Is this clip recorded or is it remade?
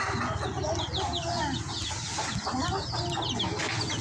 recorded